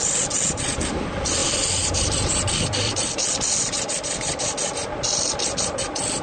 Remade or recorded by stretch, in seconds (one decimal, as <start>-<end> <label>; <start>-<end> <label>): 0.0-6.2 remade